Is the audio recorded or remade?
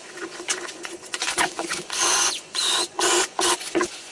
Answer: remade